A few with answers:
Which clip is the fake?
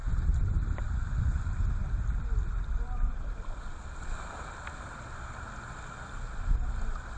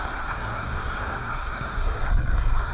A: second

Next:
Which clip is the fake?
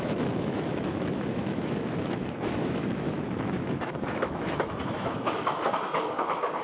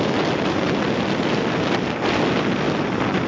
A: first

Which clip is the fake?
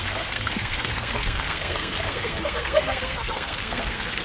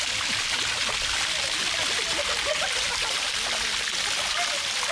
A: first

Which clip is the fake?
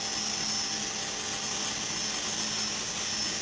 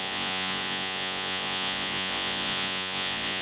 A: second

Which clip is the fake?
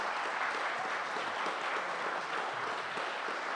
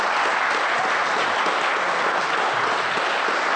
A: first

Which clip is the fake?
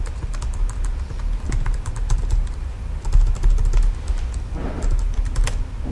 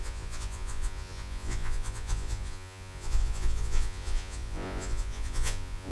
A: second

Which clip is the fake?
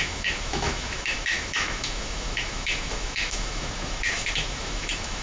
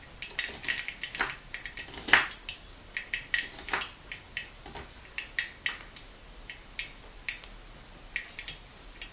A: first